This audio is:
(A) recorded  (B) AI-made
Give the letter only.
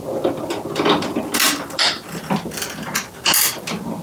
A